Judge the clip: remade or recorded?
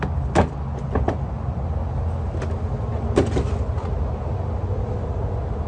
recorded